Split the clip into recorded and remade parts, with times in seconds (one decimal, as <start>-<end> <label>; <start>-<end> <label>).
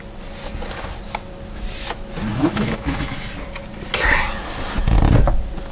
0.0-2.3 recorded; 2.3-3.3 remade; 3.3-5.7 recorded